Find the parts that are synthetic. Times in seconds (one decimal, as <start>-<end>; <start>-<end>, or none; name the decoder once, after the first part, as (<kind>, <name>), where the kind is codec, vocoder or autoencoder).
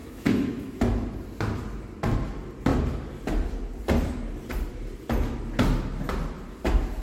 0.0-0.8 (autoencoder, DAC-VAE)